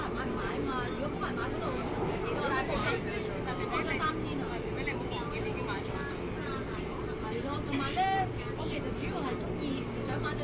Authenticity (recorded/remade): recorded